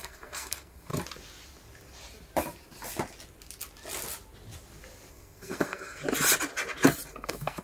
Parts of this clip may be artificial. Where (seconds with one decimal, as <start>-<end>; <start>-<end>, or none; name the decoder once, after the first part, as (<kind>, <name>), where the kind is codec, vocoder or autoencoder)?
0.0-0.9 (codec, SNAC); 5.1-6.0; 7.1-7.6